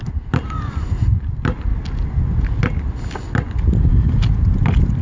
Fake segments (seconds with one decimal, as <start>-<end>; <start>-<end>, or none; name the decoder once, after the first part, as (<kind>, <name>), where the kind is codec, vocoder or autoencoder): none